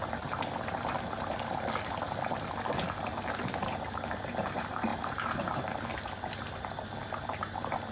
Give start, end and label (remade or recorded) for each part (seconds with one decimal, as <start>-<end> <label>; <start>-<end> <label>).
0.0-4.9 recorded; 4.9-5.7 remade; 5.7-7.9 recorded

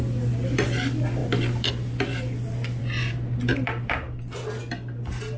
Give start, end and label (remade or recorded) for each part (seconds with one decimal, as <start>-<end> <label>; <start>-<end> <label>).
0.0-5.4 recorded

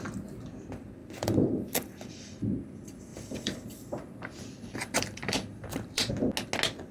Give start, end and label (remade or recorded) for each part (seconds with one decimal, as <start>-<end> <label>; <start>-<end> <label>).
0.0-1.0 recorded; 1.0-2.4 remade; 2.4-3.1 recorded; 3.1-6.1 remade; 6.1-6.9 recorded

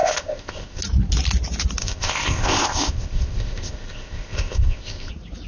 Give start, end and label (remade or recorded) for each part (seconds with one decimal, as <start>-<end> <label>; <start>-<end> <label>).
0.0-0.8 remade; 0.8-1.8 recorded; 1.8-5.1 remade; 5.1-5.5 recorded

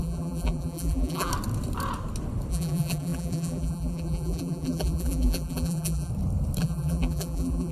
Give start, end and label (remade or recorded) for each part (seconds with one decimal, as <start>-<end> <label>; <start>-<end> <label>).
0.0-1.3 remade; 1.3-2.5 recorded; 2.5-6.1 remade; 6.1-6.6 recorded; 6.6-7.7 remade

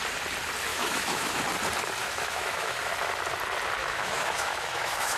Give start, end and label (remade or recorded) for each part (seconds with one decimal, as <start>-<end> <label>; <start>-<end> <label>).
0.0-0.7 recorded; 0.7-1.4 remade; 1.4-2.0 recorded; 2.0-2.9 remade; 2.9-3.8 recorded; 3.8-5.2 remade

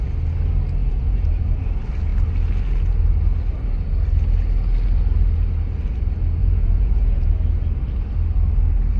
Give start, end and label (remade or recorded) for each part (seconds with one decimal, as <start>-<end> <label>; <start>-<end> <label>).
0.0-0.8 recorded; 0.8-1.6 remade; 1.6-6.4 recorded; 6.4-7.3 remade; 7.3-9.0 recorded